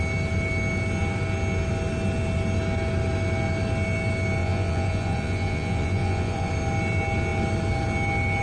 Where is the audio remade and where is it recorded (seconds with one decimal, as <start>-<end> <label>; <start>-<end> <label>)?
0.0-4.4 recorded; 4.4-6.5 remade; 6.5-8.4 recorded